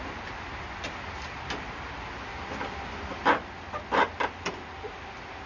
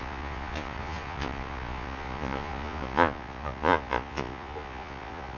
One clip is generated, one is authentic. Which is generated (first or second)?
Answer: second